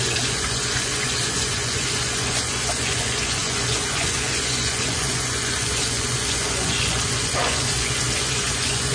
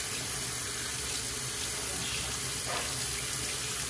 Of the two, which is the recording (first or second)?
second